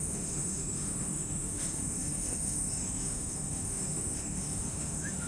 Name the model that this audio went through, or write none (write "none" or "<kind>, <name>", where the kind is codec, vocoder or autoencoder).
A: autoencoder, DAC-VAE